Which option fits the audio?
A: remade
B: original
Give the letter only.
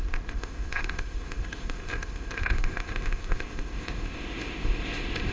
A